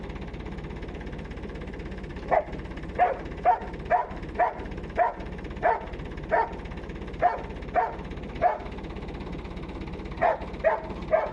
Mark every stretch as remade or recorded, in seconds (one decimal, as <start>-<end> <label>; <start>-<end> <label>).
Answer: 0.0-2.1 recorded; 2.1-3.6 remade; 3.6-4.0 recorded; 4.0-6.5 remade; 6.5-11.3 recorded